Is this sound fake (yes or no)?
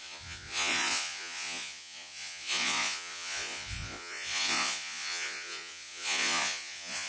yes